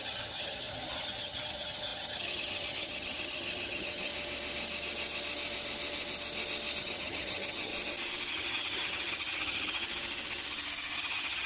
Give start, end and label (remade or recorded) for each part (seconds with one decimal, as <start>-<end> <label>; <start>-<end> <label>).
0.0-4.1 remade; 4.1-6.8 recorded; 6.8-7.7 remade; 7.7-8.3 recorded; 8.3-9.9 remade; 9.9-11.0 recorded; 11.0-11.5 remade